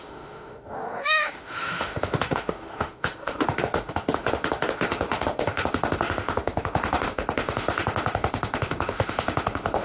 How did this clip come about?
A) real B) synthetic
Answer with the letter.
B